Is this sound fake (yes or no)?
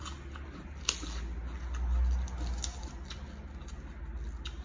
no